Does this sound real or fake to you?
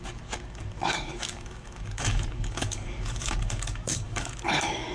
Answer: fake